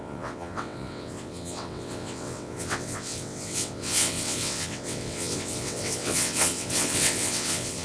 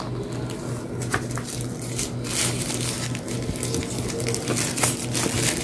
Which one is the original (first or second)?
second